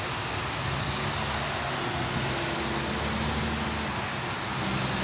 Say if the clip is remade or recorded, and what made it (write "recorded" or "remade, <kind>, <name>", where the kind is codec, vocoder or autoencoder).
recorded